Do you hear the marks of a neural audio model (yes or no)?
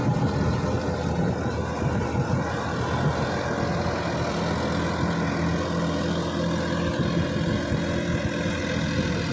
no